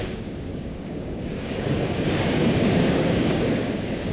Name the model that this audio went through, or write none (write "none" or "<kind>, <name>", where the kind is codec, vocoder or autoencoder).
codec, DAC